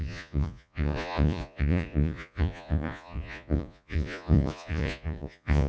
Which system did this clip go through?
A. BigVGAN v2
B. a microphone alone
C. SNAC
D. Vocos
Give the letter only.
D